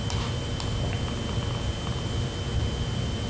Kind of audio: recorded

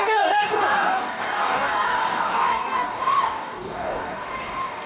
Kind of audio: remade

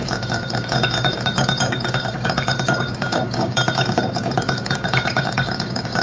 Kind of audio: remade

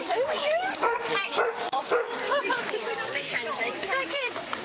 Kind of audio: remade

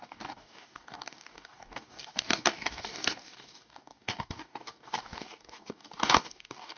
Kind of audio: remade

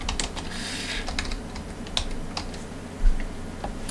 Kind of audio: recorded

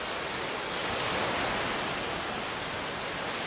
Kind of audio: recorded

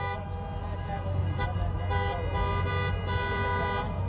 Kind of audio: recorded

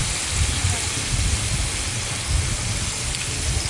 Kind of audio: recorded